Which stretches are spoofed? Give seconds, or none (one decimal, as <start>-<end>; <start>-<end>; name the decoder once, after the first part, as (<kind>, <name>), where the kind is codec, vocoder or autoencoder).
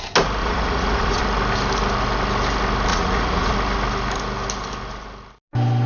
0.4-1.2 (vocoder, Vocos); 2.9-3.5